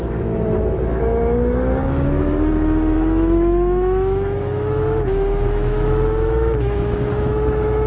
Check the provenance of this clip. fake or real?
fake